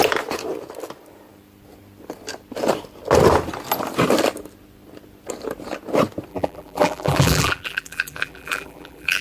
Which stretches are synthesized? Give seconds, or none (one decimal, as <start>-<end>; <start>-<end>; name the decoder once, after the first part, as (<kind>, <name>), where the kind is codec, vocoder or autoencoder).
6.3-9.2 (vocoder, BigVGAN v2)